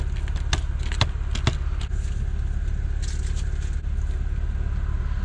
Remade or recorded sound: recorded